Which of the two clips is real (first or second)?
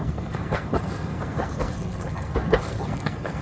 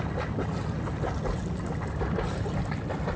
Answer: second